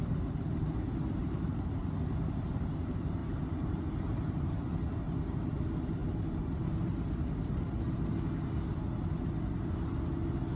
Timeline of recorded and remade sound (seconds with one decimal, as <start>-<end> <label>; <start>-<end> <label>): 0.0-1.2 recorded; 1.2-1.7 remade; 1.7-3.2 recorded; 3.2-4.5 remade; 4.5-10.6 recorded